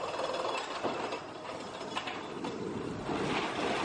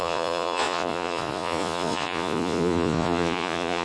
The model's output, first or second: second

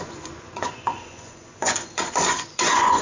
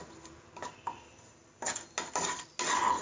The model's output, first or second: first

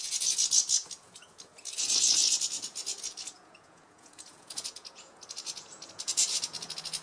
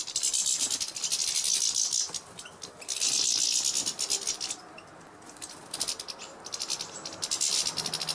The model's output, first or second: first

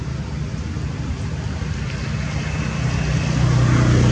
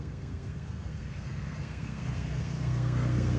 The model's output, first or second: second